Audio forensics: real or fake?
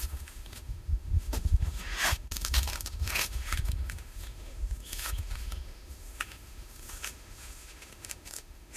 fake